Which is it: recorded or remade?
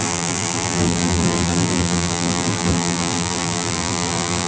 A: remade